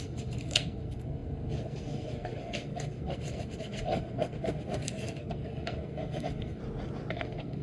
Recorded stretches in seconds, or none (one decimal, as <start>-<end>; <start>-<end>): 6.6-7.1